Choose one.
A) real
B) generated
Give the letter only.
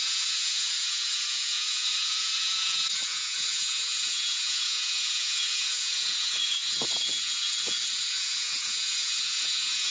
B